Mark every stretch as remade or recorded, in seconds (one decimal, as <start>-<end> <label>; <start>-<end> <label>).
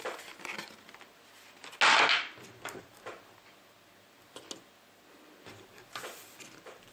0.0-6.9 recorded